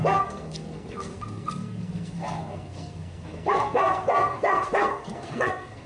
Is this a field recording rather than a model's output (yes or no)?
no